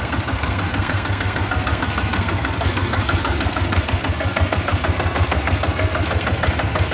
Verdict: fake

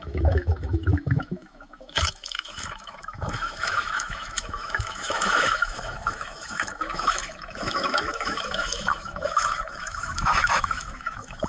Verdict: fake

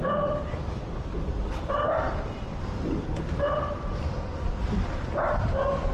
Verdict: fake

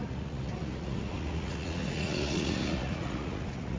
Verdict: fake